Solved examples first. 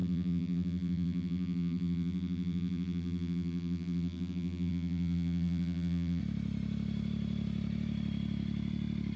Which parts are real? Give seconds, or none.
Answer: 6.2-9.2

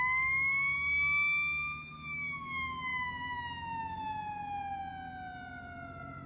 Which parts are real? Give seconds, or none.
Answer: 0.0-6.3